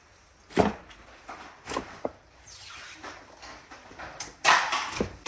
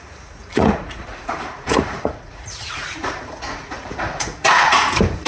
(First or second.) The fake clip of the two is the second